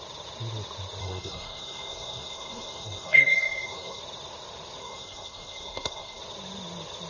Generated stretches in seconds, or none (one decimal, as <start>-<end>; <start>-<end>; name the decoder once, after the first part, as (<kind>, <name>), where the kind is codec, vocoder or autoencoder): 1.0-4.0 (codec, SNAC); 4.8-6.2